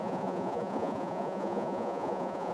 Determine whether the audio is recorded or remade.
remade